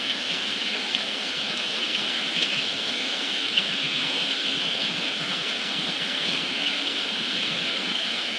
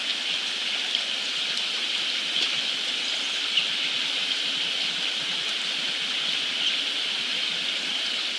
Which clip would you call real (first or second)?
second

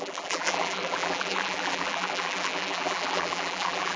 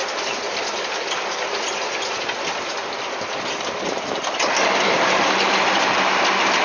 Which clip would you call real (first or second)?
second